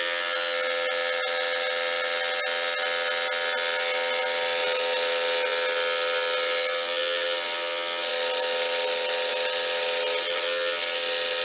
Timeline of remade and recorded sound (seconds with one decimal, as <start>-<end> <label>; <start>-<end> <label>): 0.0-11.4 recorded

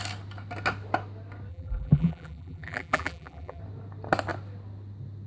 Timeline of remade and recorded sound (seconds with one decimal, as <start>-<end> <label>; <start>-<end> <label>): 0.0-1.5 recorded; 1.5-3.6 remade; 3.6-5.3 recorded

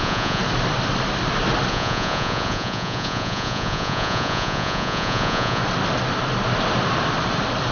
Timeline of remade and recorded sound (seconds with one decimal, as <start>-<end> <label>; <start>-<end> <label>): 0.0-0.4 remade; 0.4-1.7 recorded; 1.7-5.6 remade; 5.6-7.7 recorded

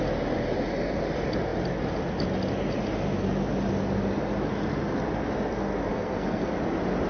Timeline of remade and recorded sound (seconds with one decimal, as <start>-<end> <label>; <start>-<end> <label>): 0.0-5.9 recorded; 5.9-6.5 remade; 6.5-7.1 recorded

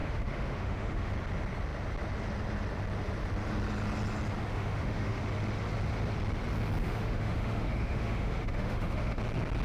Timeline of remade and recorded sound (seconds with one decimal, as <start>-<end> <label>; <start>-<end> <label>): 0.0-1.1 remade; 1.1-4.5 recorded; 4.5-5.2 remade; 5.2-6.8 recorded; 6.8-9.2 remade; 9.2-9.6 recorded

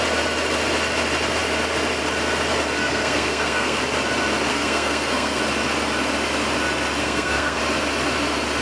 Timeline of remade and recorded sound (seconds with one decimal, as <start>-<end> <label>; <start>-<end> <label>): 0.0-2.8 recorded; 2.8-3.8 remade; 3.8-4.5 recorded; 4.5-5.4 remade; 5.4-7.0 recorded; 7.0-7.6 remade; 7.6-8.6 recorded

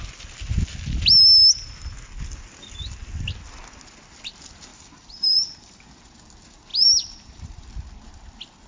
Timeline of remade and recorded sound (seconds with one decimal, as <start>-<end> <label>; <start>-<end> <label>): 0.0-4.7 recorded; 4.7-5.8 remade; 5.8-6.7 recorded; 6.7-7.6 remade; 7.6-8.7 recorded